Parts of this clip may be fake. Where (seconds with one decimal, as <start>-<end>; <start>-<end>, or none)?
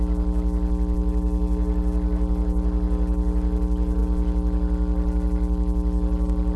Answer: none